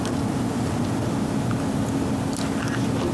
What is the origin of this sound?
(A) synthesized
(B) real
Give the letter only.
B